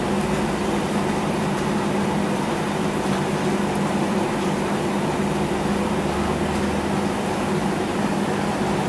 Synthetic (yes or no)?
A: yes